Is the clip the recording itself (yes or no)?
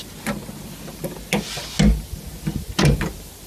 yes